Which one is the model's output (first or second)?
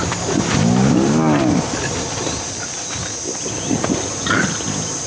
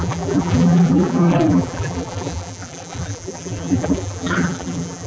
second